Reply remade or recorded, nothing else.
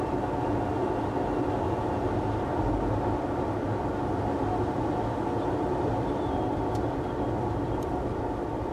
recorded